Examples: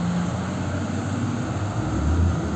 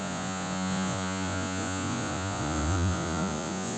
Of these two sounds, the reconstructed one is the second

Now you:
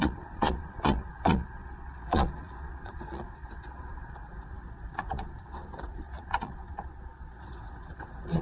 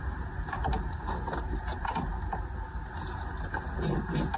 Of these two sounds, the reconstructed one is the first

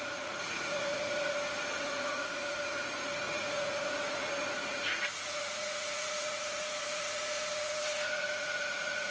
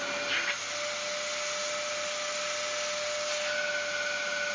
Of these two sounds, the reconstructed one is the first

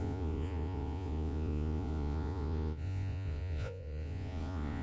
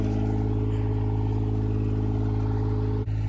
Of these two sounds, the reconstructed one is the first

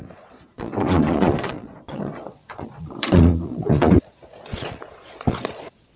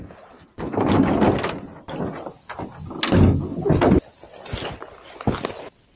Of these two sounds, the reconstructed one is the first